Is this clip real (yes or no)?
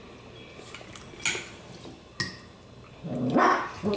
yes